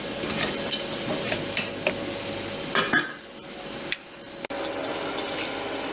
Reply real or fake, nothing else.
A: real